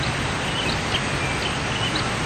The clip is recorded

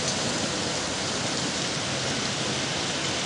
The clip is recorded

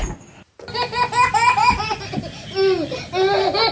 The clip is recorded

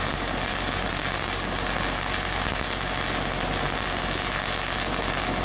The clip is recorded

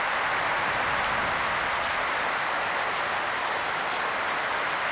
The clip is recorded